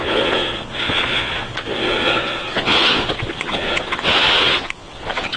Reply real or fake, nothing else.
fake